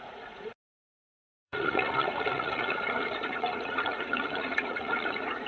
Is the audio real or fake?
fake